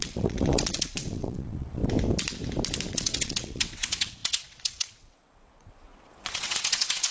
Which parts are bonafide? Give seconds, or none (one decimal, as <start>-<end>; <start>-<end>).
1.8-2.9